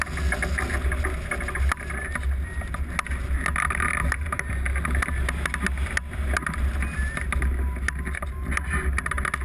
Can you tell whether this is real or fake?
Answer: real